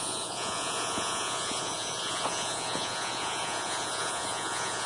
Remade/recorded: remade